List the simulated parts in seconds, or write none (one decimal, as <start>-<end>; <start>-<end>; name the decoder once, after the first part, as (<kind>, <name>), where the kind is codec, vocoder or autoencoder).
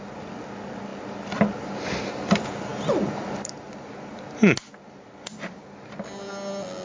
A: none